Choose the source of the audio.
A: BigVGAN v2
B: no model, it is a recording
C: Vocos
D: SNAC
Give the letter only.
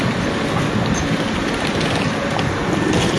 B